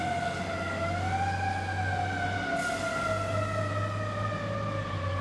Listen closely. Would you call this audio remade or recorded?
recorded